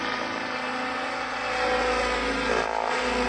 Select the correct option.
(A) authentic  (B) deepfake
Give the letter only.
A